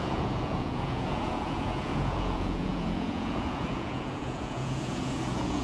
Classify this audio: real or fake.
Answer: fake